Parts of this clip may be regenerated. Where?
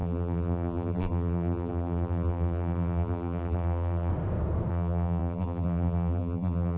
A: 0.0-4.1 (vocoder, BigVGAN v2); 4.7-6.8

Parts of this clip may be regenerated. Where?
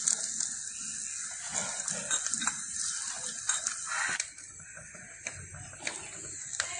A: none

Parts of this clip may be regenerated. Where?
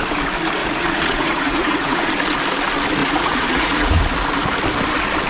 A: 0.6-2.1 (vocoder, Vocos); 3.0-4.0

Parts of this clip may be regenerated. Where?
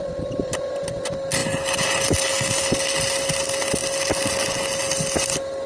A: none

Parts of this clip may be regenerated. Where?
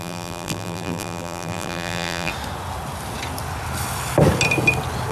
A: 0.0-2.3 (vocoder, BigVGAN v2)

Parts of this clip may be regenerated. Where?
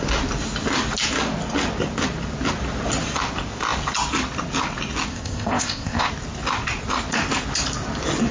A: 5.1-6.1 (codec, ZipCodec)